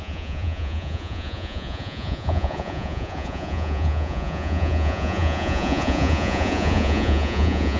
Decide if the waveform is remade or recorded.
remade